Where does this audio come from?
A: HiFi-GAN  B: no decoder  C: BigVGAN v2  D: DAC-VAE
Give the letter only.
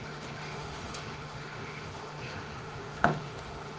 D